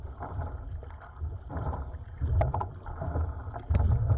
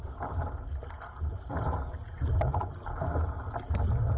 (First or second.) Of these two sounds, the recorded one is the second